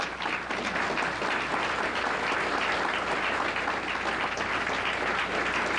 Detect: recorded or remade recorded